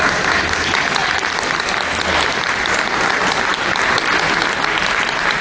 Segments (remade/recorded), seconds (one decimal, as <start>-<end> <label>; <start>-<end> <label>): 0.0-5.4 recorded